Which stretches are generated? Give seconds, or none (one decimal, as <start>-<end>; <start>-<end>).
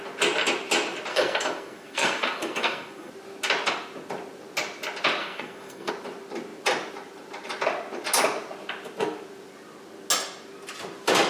1.1-3.1; 5.2-5.9